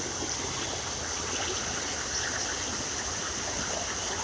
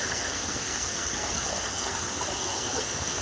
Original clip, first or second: first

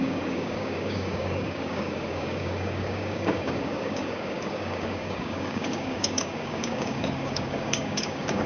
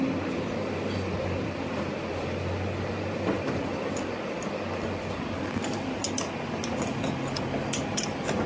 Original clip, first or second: second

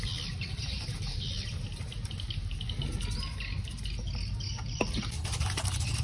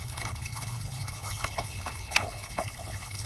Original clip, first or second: first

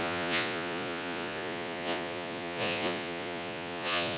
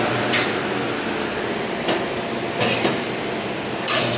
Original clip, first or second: second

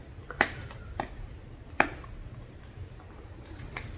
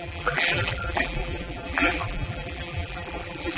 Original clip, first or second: first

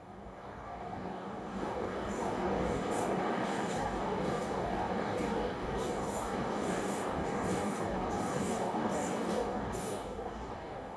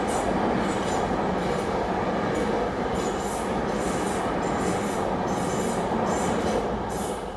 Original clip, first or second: second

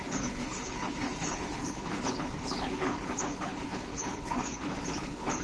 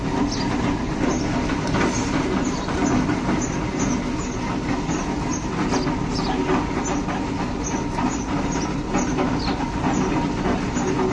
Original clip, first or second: second